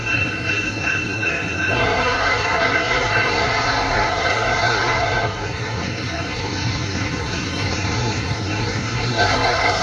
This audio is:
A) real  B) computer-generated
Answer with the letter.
B